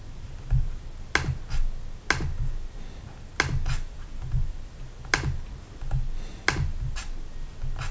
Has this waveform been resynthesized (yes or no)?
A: no